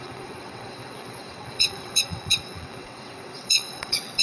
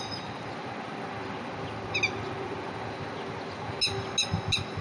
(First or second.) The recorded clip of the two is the second